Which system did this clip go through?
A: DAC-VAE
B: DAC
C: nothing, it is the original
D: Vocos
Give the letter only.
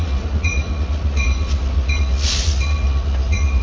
D